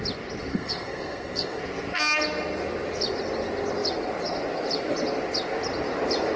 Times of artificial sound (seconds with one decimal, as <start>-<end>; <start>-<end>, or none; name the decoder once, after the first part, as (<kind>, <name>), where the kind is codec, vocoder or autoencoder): 0.5-1.6 (codec, SNAC)